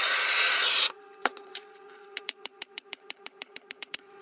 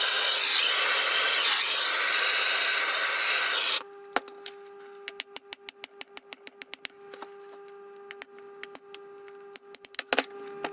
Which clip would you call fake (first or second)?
first